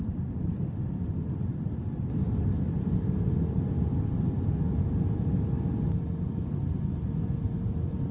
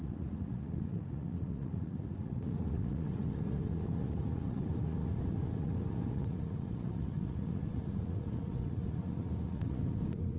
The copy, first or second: second